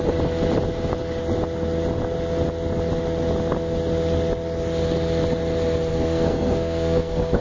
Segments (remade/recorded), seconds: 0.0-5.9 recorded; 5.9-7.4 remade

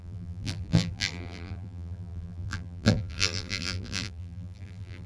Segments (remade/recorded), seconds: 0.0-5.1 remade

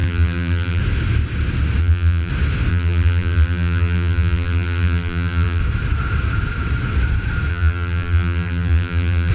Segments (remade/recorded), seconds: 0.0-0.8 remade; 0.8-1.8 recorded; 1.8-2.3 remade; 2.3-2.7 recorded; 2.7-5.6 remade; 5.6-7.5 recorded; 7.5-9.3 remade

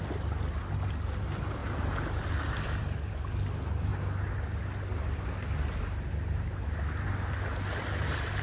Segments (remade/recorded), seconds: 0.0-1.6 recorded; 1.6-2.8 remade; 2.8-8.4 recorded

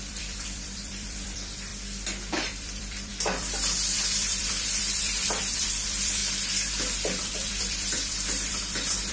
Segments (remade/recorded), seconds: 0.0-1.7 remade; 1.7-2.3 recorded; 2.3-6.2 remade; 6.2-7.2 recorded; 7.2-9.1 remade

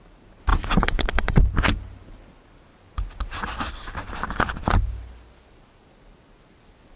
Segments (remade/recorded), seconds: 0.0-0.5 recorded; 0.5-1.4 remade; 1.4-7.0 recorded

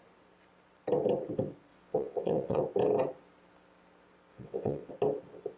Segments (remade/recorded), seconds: 0.0-1.7 recorded; 1.7-2.6 remade; 2.6-4.3 recorded; 4.3-4.9 remade; 4.9-5.6 recorded

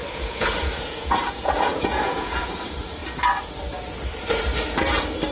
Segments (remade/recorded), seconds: 0.0-2.5 remade; 2.5-5.3 recorded